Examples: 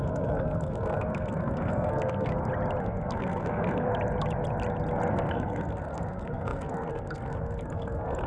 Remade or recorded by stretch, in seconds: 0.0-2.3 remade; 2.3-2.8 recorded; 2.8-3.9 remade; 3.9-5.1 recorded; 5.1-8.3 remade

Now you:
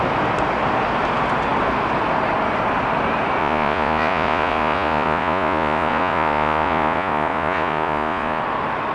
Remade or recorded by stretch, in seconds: 0.0-3.4 recorded; 3.4-8.4 remade; 8.4-8.9 recorded